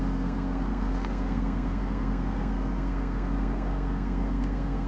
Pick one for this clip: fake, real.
fake